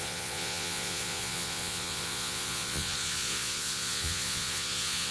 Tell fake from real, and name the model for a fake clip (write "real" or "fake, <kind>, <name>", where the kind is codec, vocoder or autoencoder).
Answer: fake, vocoder, Vocos